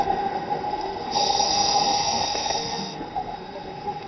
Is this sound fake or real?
fake